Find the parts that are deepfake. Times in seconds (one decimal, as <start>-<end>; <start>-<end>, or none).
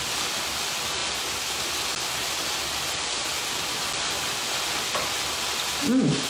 none